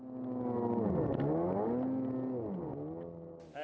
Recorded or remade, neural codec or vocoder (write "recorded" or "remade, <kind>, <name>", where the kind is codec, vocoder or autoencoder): recorded